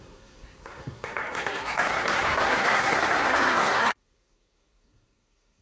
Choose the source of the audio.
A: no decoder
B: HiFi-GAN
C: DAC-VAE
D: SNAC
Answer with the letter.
D